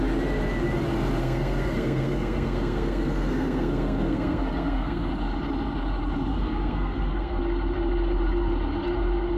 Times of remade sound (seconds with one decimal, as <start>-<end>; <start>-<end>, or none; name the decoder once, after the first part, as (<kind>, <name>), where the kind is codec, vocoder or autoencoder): 1.2-5.1 (codec, SNAC); 6.3-7.4